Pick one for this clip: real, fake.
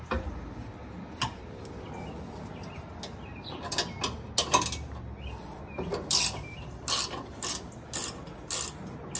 real